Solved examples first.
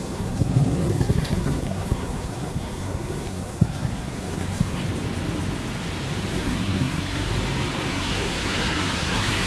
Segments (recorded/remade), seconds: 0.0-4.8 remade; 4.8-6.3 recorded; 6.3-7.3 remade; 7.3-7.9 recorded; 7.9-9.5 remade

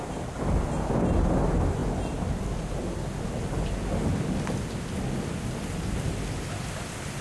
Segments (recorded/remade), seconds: 0.0-7.2 recorded

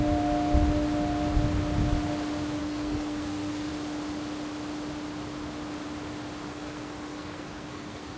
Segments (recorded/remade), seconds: 0.0-2.6 recorded; 2.6-3.7 remade; 3.7-6.5 recorded; 6.5-8.2 remade